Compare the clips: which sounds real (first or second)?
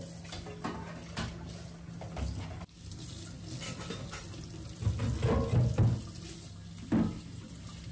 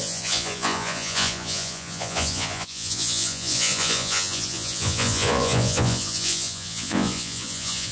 first